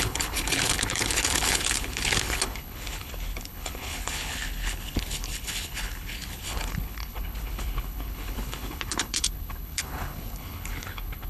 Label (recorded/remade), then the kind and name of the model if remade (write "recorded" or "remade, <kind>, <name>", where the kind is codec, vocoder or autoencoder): remade, codec, HILCodec